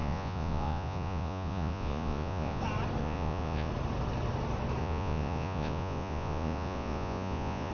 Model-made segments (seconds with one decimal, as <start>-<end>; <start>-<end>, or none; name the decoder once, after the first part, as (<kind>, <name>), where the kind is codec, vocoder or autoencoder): 0.0-2.6 (vocoder, Vocos); 3.0-3.7; 4.8-7.7